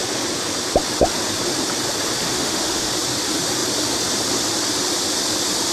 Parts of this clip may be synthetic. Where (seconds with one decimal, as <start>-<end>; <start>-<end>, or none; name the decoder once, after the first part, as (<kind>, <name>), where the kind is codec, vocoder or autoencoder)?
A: 2.3-2.9 (autoencoder, DAC-VAE)